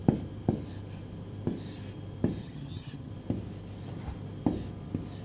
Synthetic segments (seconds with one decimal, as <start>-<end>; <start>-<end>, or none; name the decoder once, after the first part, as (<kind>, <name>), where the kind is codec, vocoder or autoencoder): 2.4-3.1 (vocoder, HiFi-GAN)